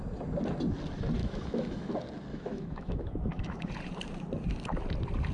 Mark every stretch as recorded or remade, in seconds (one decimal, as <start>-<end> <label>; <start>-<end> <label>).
0.0-1.2 recorded; 1.2-1.9 remade; 1.9-2.3 recorded; 2.3-3.7 remade; 3.7-5.3 recorded